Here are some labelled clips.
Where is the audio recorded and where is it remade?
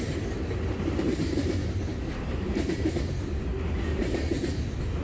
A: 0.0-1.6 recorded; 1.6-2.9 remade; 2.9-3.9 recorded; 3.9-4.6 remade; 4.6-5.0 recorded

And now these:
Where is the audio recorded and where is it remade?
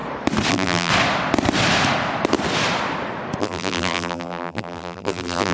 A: 0.0-0.5 recorded; 0.5-0.9 remade; 0.9-3.4 recorded; 3.4-5.5 remade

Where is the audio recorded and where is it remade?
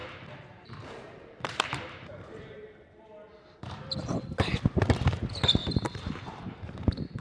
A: 0.0-3.8 remade; 3.8-5.6 recorded; 5.6-7.2 remade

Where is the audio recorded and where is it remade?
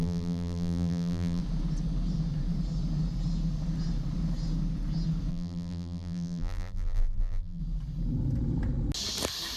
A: 0.0-1.4 remade; 1.4-5.3 recorded; 5.3-7.6 remade; 7.6-9.6 recorded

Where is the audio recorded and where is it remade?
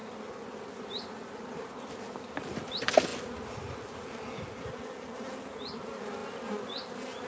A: 0.0-2.7 remade; 2.7-7.3 recorded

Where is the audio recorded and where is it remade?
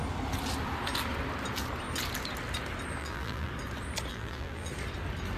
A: 0.0-3.0 recorded; 3.0-3.5 remade; 3.5-4.1 recorded; 4.1-4.7 remade; 4.7-5.4 recorded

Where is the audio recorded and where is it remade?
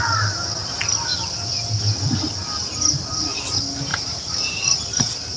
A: 0.0-3.9 recorded; 3.9-4.6 remade; 4.6-5.4 recorded